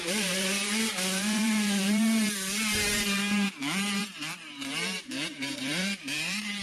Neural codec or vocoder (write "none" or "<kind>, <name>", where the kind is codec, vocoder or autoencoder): vocoder, BigVGAN v2